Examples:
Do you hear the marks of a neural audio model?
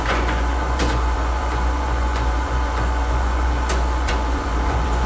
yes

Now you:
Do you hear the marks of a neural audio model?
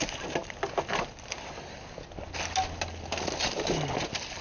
no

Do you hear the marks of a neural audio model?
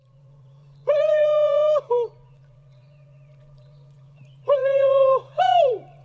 yes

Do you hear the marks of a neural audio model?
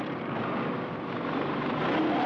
no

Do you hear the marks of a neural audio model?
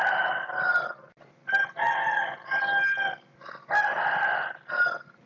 no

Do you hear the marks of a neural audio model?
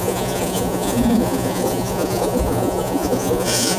yes